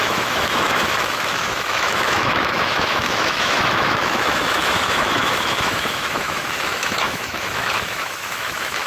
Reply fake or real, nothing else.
fake